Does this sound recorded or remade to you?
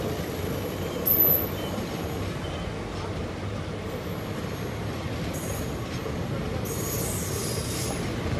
recorded